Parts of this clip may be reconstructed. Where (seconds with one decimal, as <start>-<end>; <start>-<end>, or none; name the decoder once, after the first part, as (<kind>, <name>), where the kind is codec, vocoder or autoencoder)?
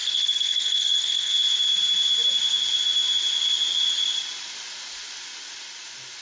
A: 0.0-1.3 (codec, SNAC)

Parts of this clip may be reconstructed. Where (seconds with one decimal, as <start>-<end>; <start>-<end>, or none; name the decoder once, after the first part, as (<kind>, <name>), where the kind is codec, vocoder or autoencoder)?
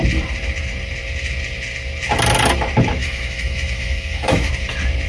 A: 3.0-4.5 (autoencoder, DAC-VAE)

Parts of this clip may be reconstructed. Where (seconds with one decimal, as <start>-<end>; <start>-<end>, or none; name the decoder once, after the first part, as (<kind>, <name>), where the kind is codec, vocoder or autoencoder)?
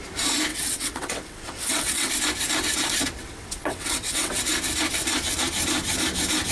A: 0.5-2.1 (vocoder, WaveNeXt); 3.2-4.4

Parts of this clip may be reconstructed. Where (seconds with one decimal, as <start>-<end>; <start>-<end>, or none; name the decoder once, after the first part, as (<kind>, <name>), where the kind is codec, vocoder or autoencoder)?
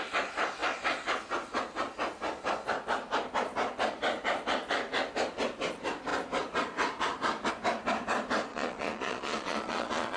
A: 8.5-10.2 (vocoder, Vocos)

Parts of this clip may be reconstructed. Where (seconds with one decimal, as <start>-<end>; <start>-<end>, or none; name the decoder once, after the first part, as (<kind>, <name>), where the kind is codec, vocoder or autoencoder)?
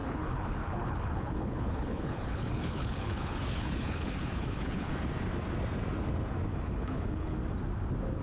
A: 0.0-4.9 (codec, HILCodec); 6.5-7.4